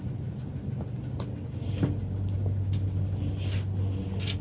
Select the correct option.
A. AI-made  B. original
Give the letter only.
B